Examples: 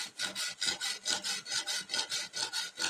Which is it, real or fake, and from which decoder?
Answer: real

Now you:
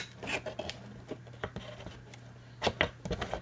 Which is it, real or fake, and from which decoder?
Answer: real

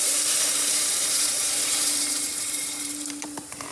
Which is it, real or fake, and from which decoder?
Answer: fake, vocoder, BigVGAN v2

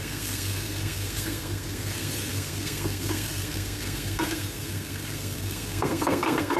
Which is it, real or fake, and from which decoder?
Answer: fake, codec, SNAC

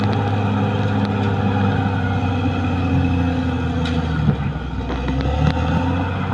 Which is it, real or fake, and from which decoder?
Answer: real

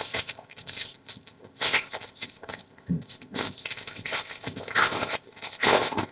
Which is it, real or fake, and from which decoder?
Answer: fake, codec, ZipCodec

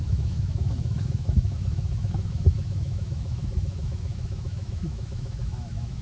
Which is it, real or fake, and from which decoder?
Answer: fake, autoencoder, DAC-VAE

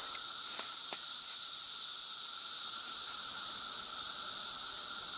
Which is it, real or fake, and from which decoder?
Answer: real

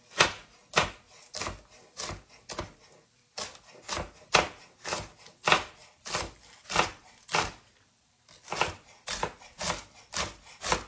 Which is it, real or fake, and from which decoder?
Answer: real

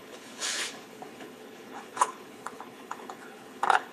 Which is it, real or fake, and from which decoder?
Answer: fake, codec, HILCodec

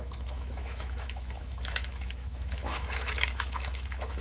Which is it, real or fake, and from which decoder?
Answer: fake, autoencoder, DAC-VAE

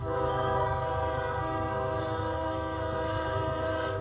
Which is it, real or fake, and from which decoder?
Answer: fake, codec, SNAC